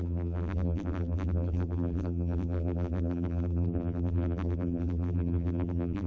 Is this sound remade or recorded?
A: remade